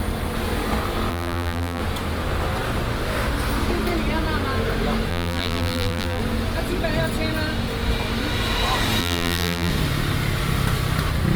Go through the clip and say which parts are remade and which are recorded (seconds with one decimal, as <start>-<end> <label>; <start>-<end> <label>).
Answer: 0.0-1.1 recorded; 1.1-1.8 remade; 1.8-5.1 recorded; 5.1-6.2 remade; 6.2-9.0 recorded; 9.0-9.7 remade; 9.7-11.4 recorded